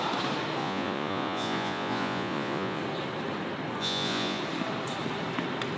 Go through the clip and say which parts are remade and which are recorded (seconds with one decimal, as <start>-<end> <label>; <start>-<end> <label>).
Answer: 0.0-0.6 recorded; 0.6-2.8 remade; 2.8-3.8 recorded; 3.8-4.4 remade; 4.4-5.8 recorded